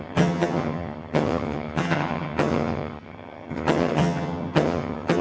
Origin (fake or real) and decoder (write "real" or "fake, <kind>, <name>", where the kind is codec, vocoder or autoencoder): fake, vocoder, HiFi-GAN